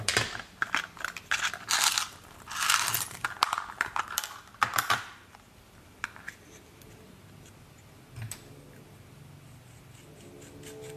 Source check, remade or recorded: recorded